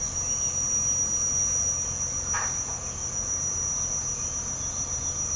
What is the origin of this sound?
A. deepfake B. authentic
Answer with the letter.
B